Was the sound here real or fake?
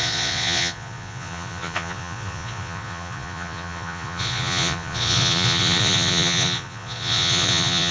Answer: fake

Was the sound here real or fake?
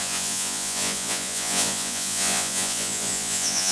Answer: fake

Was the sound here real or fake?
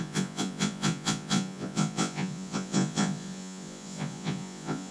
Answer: fake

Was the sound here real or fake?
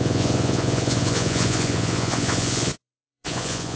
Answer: fake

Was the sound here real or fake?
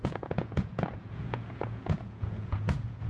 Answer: fake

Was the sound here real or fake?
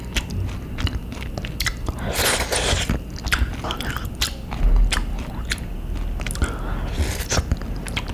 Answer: real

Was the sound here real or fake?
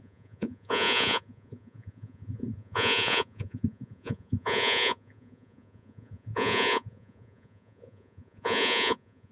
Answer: fake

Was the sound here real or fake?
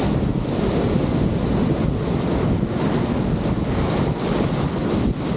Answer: real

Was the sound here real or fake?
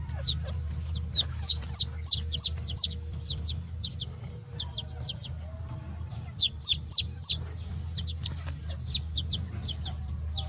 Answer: real